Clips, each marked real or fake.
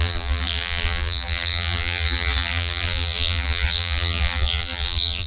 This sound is fake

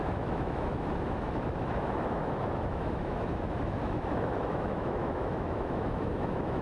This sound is fake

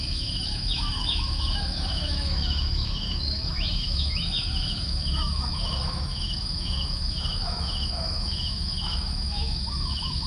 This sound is fake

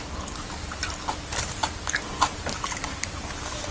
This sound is real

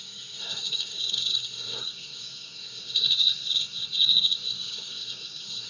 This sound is fake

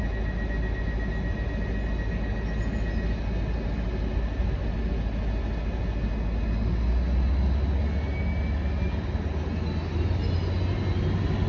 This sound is real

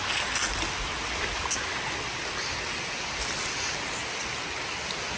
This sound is real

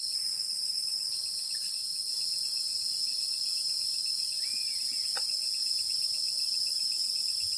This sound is real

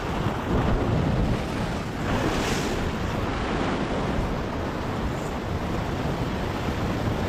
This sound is real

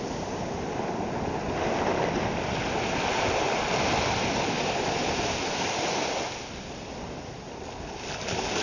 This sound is real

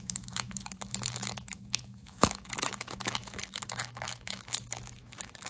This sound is fake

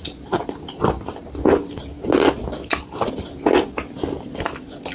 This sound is real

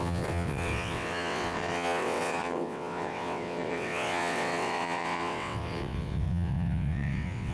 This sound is fake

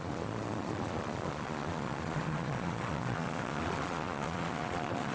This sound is fake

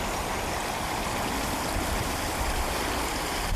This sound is real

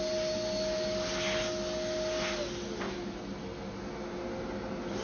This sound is real